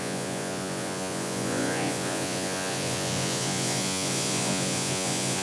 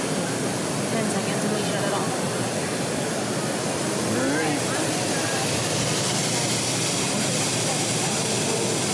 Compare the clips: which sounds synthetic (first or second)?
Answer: first